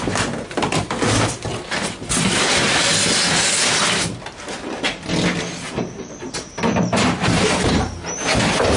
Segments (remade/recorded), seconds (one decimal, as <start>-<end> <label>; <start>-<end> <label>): 0.0-1.5 remade; 1.5-6.0 recorded; 6.0-8.8 remade